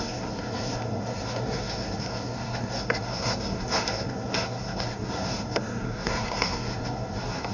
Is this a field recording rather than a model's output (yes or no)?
no